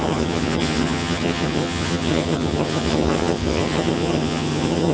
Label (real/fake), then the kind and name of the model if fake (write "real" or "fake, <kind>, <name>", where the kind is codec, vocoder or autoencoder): fake, vocoder, HiFi-GAN